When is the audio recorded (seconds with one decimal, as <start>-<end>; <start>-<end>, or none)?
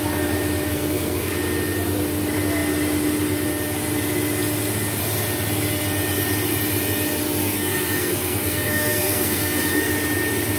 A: 0.0-0.7; 1.3-7.4; 9.9-10.6